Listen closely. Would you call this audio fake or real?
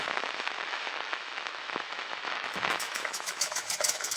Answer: fake